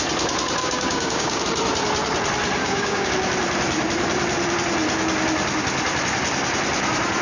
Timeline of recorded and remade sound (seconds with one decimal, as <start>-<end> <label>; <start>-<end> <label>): 0.0-0.6 recorded; 0.6-1.4 remade; 1.4-2.6 recorded; 2.6-3.1 remade; 3.1-7.2 recorded